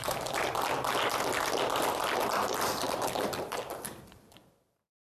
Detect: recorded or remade remade